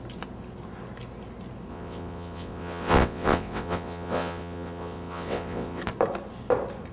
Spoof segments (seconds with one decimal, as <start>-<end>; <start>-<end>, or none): 1.7-5.8